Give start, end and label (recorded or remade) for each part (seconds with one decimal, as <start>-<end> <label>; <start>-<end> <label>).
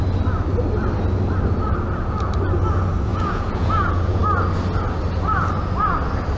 0.0-3.1 recorded; 3.1-4.2 remade; 4.2-6.4 recorded